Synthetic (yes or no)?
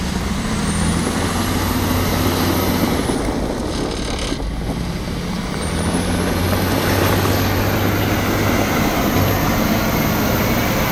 no